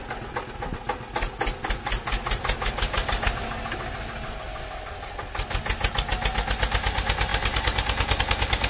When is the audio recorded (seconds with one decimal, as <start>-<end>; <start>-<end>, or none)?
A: 0.0-8.7